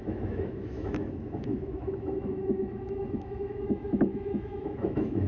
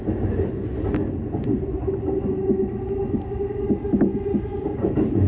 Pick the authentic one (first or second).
second